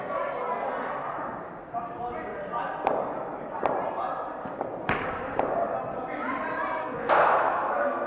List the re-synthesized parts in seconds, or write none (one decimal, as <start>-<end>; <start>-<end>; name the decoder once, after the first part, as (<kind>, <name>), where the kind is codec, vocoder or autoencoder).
6.8-8.1 (codec, SNAC)